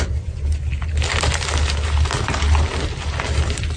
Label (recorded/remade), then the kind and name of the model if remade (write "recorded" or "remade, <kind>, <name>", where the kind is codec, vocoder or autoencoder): recorded